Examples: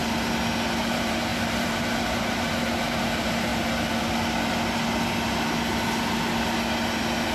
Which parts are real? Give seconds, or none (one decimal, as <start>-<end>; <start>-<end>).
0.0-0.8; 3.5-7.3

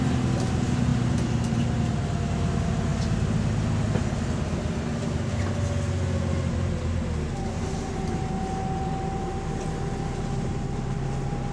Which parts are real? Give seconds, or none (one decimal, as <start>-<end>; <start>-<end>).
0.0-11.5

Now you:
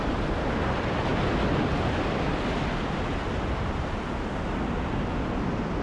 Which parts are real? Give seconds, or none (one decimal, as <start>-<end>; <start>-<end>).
0.0-5.8

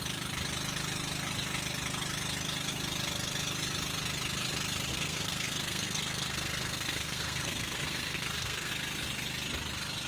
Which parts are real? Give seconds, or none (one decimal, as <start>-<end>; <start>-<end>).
0.0-4.9; 8.7-10.1

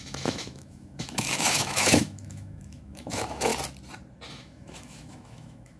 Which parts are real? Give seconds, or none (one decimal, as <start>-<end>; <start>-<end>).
3.5-4.3

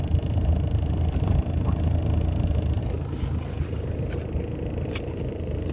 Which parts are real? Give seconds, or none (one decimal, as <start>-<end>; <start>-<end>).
2.8-5.1

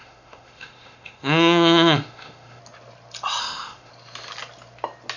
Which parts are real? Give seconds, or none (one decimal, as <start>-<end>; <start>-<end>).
2.6-3.4; 3.9-5.2

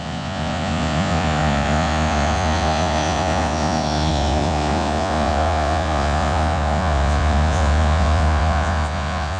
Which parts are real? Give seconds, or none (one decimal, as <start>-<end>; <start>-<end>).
none